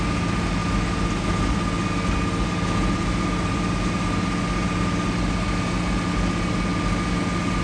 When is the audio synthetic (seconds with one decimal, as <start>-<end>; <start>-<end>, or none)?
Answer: none